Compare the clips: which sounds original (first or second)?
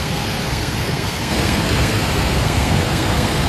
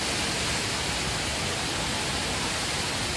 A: second